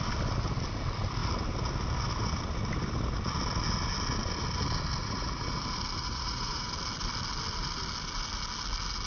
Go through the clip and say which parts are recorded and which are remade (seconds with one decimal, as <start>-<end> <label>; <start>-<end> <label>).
0.0-5.0 recorded; 5.0-5.6 remade; 5.6-6.0 recorded; 6.0-6.7 remade; 6.7-9.1 recorded